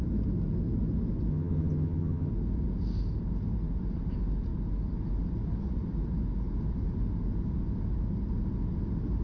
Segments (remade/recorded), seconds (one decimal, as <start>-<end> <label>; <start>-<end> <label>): 0.0-1.3 recorded; 1.3-2.3 remade; 2.3-9.2 recorded